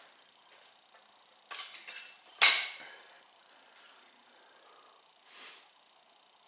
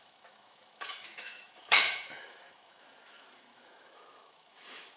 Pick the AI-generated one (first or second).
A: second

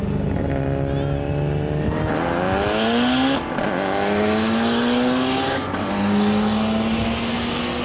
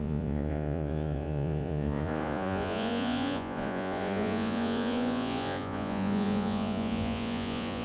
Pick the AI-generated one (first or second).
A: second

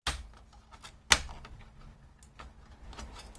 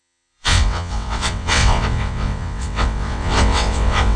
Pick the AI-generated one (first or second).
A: second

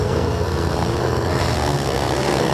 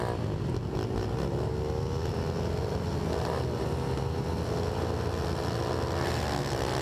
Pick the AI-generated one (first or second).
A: first